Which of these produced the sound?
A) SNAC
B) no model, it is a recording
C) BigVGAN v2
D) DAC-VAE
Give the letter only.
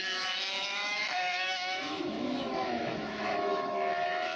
D